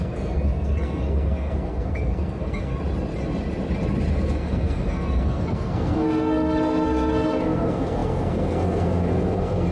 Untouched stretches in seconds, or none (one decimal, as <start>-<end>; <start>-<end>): 2.7-4.1